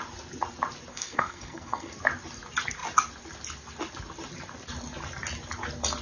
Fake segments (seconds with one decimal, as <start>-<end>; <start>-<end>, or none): 0.9-1.9